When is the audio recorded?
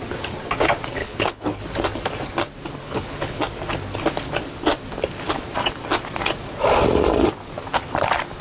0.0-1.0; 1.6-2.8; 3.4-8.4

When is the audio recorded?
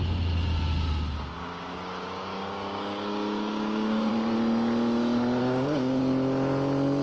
0.0-1.4; 4.1-5.4; 6.0-7.0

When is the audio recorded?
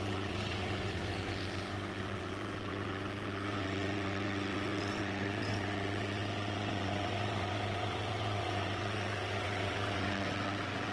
1.0-1.9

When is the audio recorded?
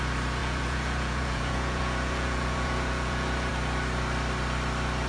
0.0-0.4; 3.5-5.1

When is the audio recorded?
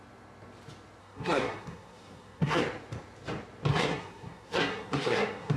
0.0-1.0; 2.6-3.7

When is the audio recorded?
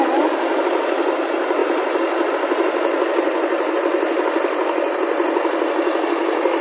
0.0-6.6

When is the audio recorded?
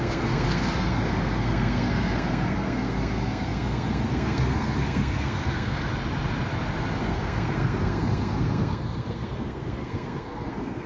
5.9-7.0